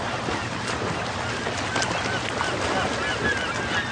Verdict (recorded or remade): recorded